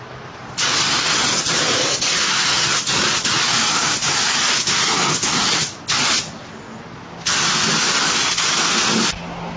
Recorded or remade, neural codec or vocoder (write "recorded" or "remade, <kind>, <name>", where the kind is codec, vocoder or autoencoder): recorded